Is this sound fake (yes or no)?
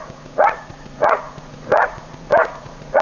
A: yes